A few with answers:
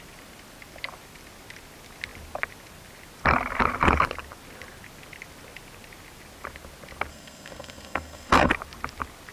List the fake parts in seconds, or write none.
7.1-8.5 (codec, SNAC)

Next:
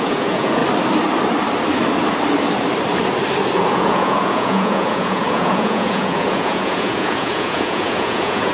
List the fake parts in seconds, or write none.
0.0-0.6 (vocoder, Vocos); 3.7-8.5

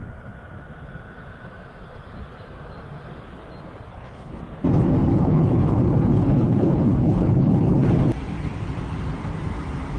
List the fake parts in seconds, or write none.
3.9-4.4 (codec, HILCodec); 5.1-7.9

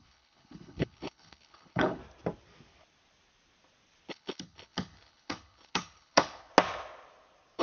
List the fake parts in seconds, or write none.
0.0-2.0 (codec, HILCodec); 4.1-6.5

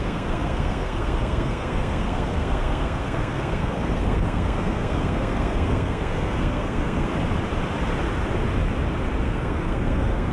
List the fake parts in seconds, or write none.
0.0-7.1 (codec, SNAC); 9.2-10.3

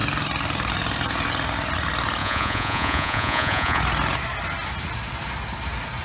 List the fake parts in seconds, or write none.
2.2-3.8 (vocoder, Vocos)